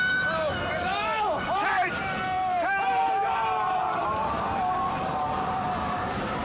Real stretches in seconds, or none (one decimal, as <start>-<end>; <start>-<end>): 4.2-4.7